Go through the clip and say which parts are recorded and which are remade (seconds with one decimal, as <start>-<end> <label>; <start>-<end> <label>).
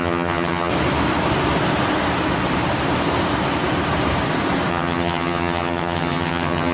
0.0-0.7 remade; 0.7-4.7 recorded; 4.7-6.7 remade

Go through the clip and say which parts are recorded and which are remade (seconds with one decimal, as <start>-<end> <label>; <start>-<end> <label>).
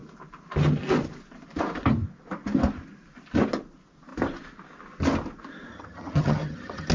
0.0-5.7 recorded; 5.7-6.9 remade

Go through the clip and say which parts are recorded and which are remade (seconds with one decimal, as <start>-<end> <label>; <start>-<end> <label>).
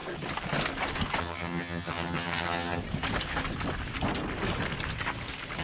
0.0-1.2 recorded; 1.2-2.8 remade; 2.8-5.6 recorded